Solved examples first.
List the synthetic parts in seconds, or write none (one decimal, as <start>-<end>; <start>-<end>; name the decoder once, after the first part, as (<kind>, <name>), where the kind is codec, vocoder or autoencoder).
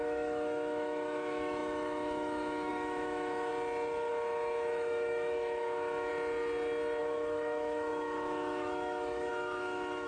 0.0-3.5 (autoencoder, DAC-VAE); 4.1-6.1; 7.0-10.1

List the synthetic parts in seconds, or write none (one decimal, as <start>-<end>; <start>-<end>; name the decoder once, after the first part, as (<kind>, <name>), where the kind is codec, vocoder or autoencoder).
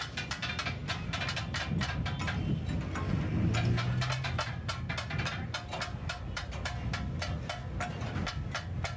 none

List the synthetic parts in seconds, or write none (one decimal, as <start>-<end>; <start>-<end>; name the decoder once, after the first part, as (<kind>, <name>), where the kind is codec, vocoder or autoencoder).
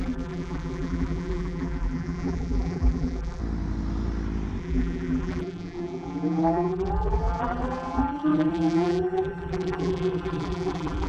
0.0-3.4 (vocoder, BigVGAN v2); 4.6-11.1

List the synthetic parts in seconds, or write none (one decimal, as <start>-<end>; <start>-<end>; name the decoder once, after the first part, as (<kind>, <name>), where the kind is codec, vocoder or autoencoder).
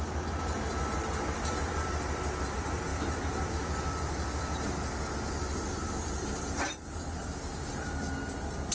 none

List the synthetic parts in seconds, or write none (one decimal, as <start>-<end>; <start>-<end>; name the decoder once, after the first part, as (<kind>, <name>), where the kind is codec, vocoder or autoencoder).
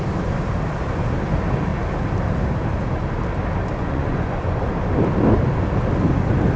3.8-4.7 (vocoder, Vocos)